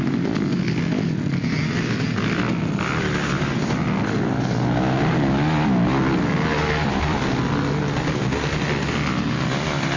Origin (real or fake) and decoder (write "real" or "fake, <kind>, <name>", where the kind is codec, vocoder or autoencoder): real